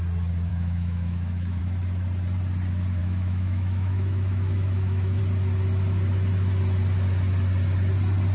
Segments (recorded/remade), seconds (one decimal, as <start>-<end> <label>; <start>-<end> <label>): 0.0-0.5 recorded; 0.5-1.6 remade; 1.6-3.0 recorded; 3.0-5.2 remade; 5.2-8.3 recorded